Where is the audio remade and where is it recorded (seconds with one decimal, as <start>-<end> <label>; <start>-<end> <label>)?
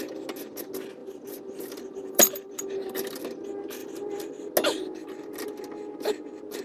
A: 0.0-1.0 recorded; 1.0-3.2 remade; 3.2-3.8 recorded; 3.8-4.3 remade; 4.3-6.6 recorded